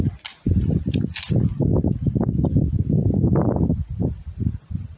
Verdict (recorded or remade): recorded